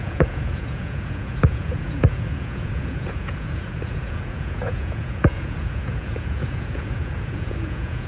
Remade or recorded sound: remade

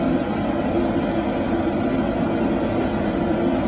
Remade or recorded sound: recorded